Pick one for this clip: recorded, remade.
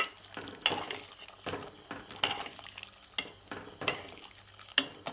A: recorded